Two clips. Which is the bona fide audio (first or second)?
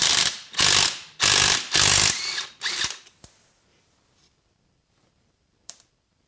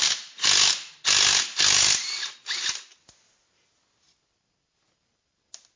second